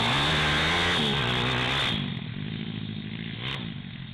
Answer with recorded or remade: recorded